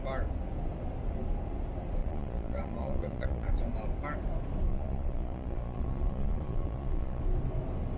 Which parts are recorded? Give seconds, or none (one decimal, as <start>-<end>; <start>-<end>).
0.0-2.0; 3.6-4.7; 7.2-8.0